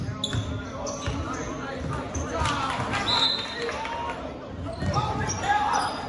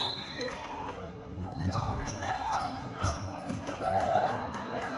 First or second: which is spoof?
second